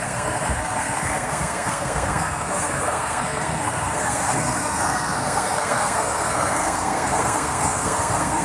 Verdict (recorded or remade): remade